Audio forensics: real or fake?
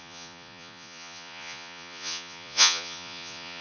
fake